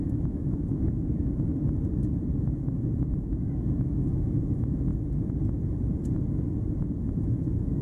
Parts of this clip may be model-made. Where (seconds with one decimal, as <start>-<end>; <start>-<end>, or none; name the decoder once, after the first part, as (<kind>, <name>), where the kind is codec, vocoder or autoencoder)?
0.0-1.5 (autoencoder, DAC-VAE); 2.4-4.9; 7.1-7.8